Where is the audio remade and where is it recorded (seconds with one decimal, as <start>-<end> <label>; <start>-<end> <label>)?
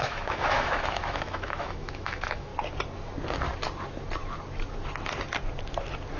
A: 0.0-2.5 remade; 2.5-6.2 recorded